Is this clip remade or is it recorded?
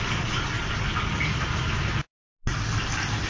recorded